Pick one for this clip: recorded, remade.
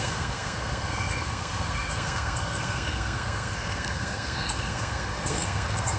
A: remade